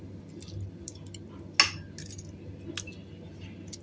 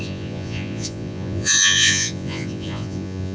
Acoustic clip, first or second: first